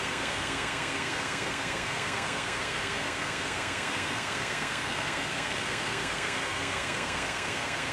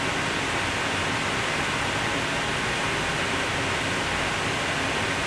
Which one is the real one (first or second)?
second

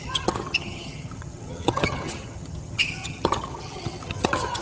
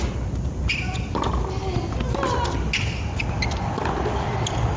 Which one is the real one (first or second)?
second